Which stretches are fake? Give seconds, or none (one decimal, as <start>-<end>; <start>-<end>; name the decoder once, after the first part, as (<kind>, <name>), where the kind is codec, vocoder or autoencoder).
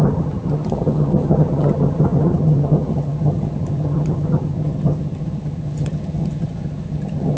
0.0-7.4 (vocoder, HiFi-GAN)